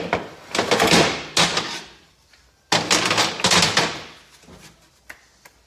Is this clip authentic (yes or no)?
yes